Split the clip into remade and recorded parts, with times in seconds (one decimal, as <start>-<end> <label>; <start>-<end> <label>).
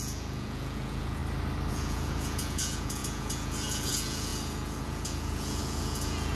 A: 0.0-1.2 remade; 1.2-1.7 recorded; 1.7-6.4 remade